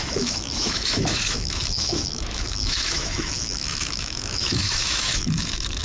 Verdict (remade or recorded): remade